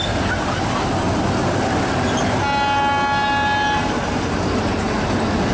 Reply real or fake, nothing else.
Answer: real